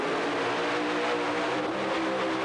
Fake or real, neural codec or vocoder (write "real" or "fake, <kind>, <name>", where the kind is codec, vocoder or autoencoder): real